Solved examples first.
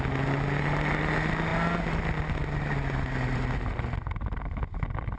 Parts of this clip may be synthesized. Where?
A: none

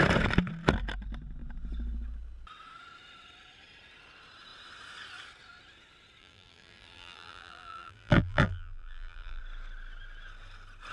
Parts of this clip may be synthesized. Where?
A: 6.2-9.4 (vocoder, BigVGAN v2)

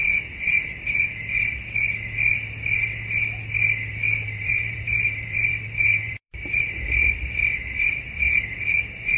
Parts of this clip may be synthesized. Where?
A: 3.9-6.6 (vocoder, BigVGAN v2)

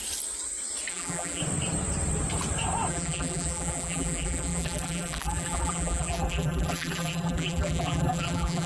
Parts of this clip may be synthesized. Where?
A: 0.9-1.4 (vocoder, BigVGAN v2); 2.9-8.7